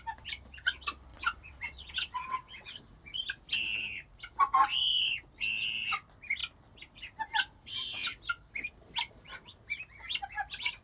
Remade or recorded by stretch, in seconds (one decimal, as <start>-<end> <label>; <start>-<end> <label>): 0.0-1.1 recorded; 1.1-2.8 remade; 2.8-10.8 recorded